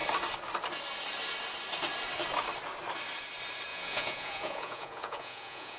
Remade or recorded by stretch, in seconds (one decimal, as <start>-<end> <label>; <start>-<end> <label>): 0.0-3.7 recorded; 3.7-5.8 remade